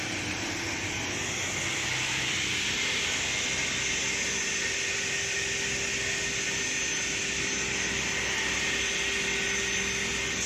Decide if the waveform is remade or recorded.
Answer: recorded